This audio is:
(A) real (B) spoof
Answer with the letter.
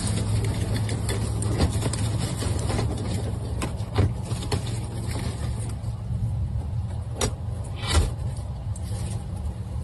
A